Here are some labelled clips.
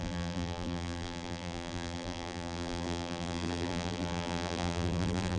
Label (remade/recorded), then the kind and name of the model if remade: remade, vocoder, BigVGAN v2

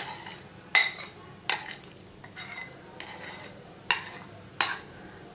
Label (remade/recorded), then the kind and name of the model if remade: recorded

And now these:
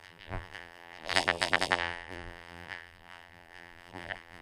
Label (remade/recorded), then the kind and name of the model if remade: remade, vocoder, BigVGAN v2